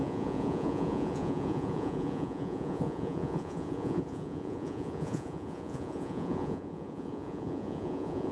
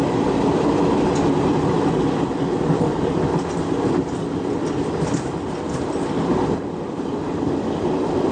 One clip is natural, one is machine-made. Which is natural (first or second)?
second